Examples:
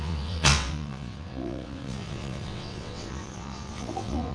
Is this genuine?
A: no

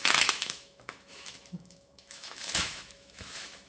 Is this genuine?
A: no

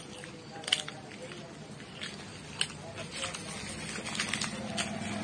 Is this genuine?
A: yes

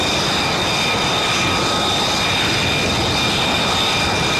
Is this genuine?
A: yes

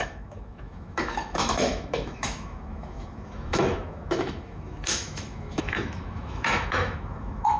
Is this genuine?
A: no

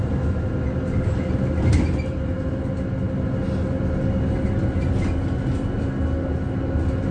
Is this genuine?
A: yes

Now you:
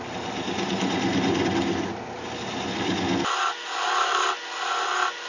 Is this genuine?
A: yes